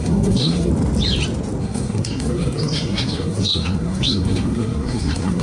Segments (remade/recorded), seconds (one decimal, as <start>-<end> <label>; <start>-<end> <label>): 0.0-0.7 remade; 0.7-1.6 recorded; 1.6-5.4 remade